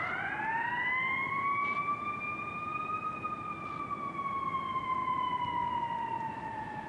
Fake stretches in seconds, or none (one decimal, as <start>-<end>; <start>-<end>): none